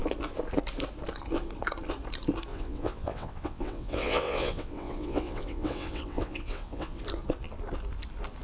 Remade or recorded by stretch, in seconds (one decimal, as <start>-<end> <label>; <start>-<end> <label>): 0.0-2.5 recorded; 2.5-7.0 remade; 7.0-8.4 recorded